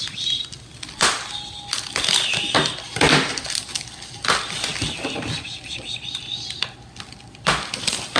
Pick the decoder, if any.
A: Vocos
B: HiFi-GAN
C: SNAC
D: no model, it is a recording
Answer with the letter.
D